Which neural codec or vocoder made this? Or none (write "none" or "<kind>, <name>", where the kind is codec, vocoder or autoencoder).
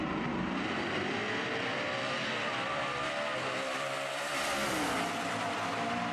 vocoder, BigVGAN v2